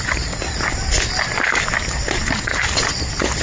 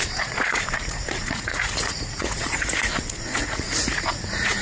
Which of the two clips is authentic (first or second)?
first